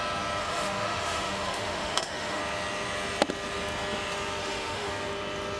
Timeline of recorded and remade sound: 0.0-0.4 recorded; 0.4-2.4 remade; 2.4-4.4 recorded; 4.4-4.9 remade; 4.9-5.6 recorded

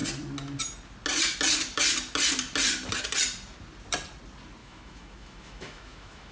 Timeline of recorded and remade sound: 0.0-4.6 recorded; 4.6-6.3 remade